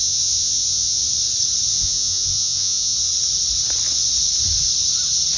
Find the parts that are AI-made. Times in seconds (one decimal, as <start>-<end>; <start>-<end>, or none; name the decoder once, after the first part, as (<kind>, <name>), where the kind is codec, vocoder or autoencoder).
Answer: 0.0-1.0 (vocoder, Vocos); 1.7-3.1